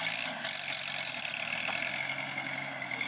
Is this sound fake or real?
real